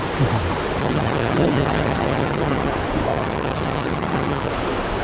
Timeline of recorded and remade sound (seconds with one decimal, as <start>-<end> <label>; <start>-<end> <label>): 0.0-0.8 recorded; 0.8-2.7 remade; 2.7-3.1 recorded; 3.1-4.5 remade; 4.5-5.0 recorded